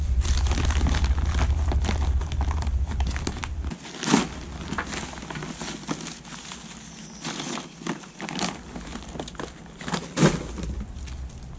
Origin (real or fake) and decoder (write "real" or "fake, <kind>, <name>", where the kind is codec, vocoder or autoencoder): real